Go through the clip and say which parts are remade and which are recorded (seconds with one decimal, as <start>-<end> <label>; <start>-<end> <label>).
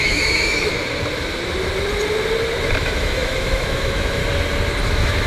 0.0-0.7 remade; 0.7-2.8 recorded; 2.8-4.2 remade; 4.2-4.8 recorded; 4.8-5.3 remade